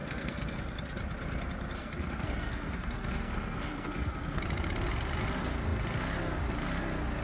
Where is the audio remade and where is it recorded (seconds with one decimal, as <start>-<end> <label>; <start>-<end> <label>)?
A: 0.0-0.6 remade; 0.6-1.8 recorded; 1.8-4.4 remade; 4.4-7.2 recorded